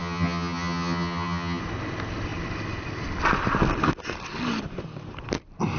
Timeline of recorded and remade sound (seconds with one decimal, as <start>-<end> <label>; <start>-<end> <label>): 0.0-1.6 remade; 1.6-5.8 recorded